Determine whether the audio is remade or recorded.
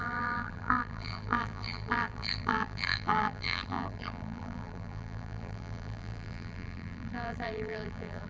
remade